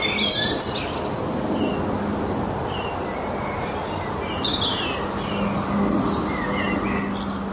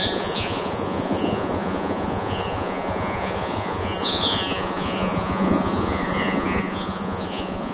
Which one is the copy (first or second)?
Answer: second